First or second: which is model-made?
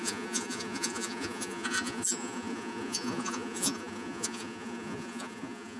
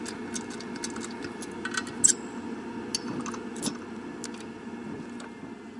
first